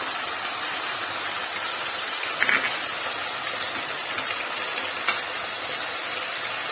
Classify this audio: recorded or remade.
recorded